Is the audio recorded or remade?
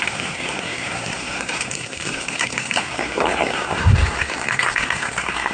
remade